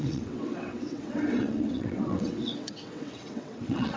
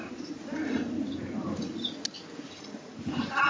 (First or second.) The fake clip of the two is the first